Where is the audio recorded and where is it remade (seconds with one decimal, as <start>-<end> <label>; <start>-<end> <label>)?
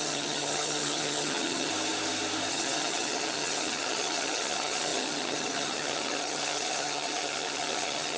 0.0-1.7 remade; 1.7-2.5 recorded; 2.5-8.2 remade